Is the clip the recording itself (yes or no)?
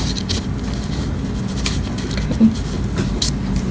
yes